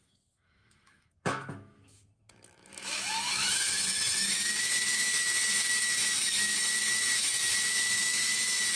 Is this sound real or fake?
fake